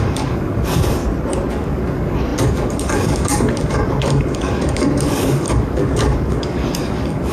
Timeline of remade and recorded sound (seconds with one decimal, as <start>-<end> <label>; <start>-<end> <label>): 0.0-1.0 remade; 1.0-1.5 recorded; 1.5-7.3 remade